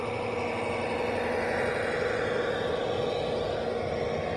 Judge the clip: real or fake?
real